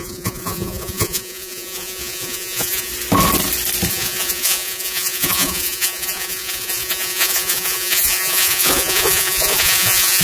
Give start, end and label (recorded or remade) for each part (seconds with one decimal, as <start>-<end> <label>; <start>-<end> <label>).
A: 0.0-2.9 remade; 2.9-3.9 recorded; 3.9-10.2 remade